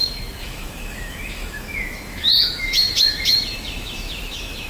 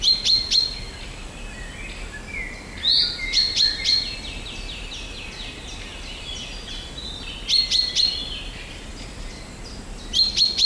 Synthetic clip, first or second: first